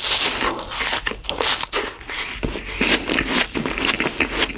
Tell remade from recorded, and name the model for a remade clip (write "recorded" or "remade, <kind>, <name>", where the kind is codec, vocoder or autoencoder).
recorded